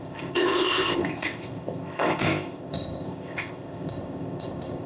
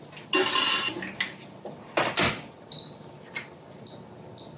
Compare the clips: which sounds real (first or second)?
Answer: second